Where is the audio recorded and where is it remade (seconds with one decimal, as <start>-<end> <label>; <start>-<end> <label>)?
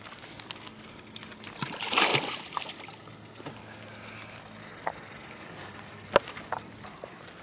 0.0-7.4 recorded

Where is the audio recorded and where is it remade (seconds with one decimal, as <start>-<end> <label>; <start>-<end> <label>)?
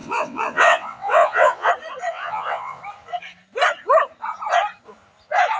0.0-1.7 remade; 1.7-2.1 recorded; 2.1-2.8 remade; 2.8-5.6 recorded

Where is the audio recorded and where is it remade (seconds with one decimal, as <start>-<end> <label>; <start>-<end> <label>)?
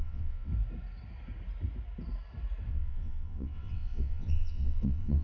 0.0-0.5 remade; 0.5-2.7 recorded; 2.7-5.2 remade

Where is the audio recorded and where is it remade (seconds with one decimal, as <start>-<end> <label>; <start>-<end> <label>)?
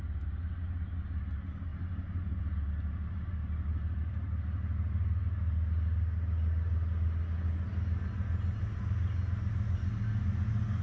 0.0-10.8 recorded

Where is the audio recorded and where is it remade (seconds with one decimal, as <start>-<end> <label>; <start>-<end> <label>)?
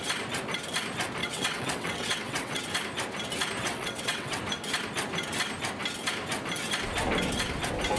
0.0-1.2 recorded; 1.2-2.6 remade; 2.6-3.6 recorded; 3.6-4.4 remade; 4.4-8.0 recorded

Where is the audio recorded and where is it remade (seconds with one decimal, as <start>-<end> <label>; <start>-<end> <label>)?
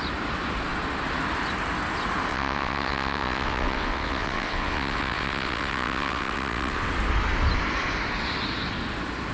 0.0-2.3 recorded; 2.3-6.9 remade; 6.9-9.3 recorded